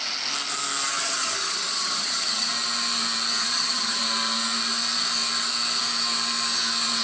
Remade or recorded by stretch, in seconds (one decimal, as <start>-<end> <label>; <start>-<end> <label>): 0.0-0.9 recorded; 0.9-2.5 remade; 2.5-3.4 recorded; 3.4-4.0 remade; 4.0-7.0 recorded